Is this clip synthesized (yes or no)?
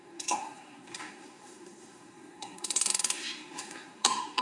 yes